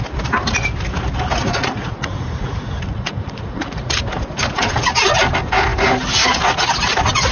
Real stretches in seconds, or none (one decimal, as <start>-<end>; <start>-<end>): 0.0-1.5; 3.9-7.3